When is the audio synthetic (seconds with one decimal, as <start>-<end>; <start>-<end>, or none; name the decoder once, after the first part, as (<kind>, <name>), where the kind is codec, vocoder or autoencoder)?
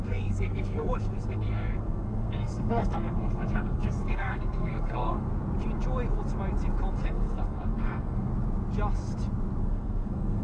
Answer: 0.0-5.3 (codec, SNAC); 6.9-8.3; 9.6-10.4